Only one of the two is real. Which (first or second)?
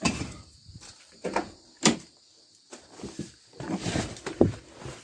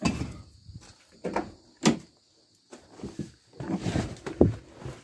second